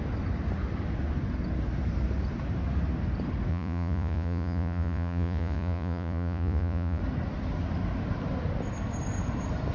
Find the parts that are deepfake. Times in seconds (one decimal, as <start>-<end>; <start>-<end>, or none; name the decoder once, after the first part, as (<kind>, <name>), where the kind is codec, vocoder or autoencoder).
3.5-7.0 (vocoder, Vocos)

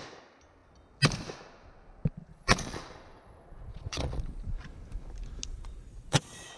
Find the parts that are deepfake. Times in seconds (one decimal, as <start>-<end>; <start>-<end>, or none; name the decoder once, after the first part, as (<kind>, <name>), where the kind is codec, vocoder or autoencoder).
2.3-4.2 (vocoder, Vocos); 5.5-6.6

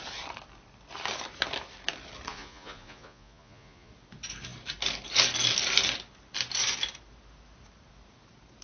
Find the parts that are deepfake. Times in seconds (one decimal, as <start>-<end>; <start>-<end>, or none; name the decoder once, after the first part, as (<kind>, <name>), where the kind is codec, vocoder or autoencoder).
2.3-3.9 (vocoder, Vocos)

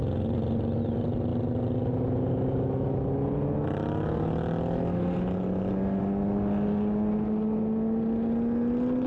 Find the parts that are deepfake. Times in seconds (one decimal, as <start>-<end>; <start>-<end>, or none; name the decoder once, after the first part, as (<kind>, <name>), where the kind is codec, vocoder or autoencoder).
none

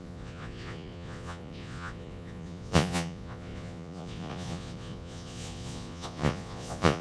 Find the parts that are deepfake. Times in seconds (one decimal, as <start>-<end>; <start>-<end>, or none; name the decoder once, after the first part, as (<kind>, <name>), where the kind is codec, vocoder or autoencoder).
0.0-7.0 (vocoder, Vocos)

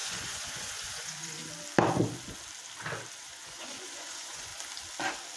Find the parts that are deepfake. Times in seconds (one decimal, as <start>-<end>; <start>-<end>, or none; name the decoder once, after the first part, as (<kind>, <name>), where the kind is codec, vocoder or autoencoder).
0.0-1.4 (vocoder, Vocos); 3.2-4.5

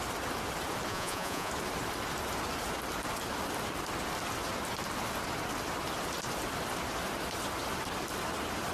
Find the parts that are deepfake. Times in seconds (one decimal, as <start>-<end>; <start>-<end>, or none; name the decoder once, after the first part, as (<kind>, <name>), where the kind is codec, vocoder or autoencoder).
0.9-1.5 (vocoder, Vocos)

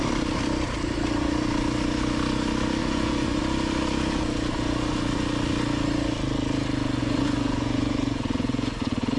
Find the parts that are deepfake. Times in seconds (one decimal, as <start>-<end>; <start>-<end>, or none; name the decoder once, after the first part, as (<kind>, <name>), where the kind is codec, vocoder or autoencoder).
2.8-3.4 (vocoder, Vocos); 7.0-9.2